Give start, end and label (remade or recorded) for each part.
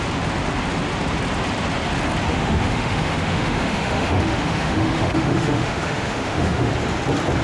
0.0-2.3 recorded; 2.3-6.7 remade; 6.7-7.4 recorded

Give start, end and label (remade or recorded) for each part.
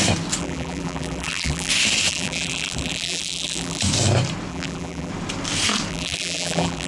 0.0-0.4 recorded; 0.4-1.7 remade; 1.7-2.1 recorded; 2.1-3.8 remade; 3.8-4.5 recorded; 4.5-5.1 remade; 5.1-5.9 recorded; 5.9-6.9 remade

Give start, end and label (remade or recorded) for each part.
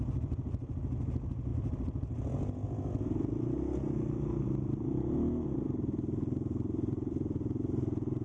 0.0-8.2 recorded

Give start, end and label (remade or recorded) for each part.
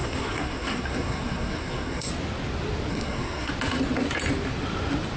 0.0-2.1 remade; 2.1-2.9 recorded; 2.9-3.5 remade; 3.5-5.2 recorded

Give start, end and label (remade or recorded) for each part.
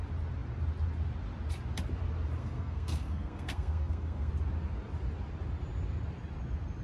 0.0-2.4 recorded; 2.4-4.3 remade; 4.3-6.8 recorded